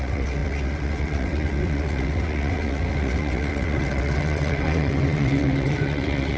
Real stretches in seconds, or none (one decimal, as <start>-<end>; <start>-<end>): none